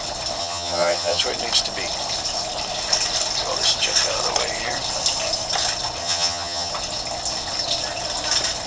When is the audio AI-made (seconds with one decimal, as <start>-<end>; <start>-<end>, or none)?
0.4-1.2; 6.0-6.7

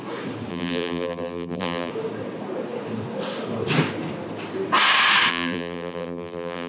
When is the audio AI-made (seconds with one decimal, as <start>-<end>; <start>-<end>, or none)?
0.5-1.9; 5.3-6.7

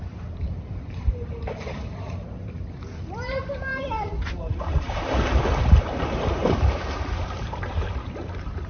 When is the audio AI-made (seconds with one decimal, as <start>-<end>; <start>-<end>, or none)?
0.0-8.7

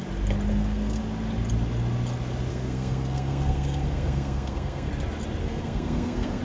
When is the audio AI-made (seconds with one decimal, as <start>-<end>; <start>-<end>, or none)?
0.5-1.0; 2.5-4.9; 5.4-6.4

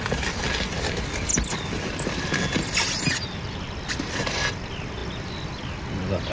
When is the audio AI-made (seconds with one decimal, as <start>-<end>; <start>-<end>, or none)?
none

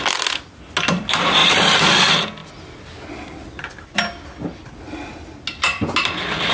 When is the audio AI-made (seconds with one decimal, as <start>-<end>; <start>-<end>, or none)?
none